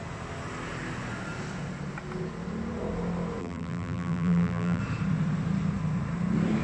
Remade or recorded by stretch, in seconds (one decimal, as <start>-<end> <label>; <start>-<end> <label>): 0.0-3.4 recorded; 3.4-4.8 remade; 4.8-6.6 recorded